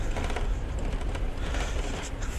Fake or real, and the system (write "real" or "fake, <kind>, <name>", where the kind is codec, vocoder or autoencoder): real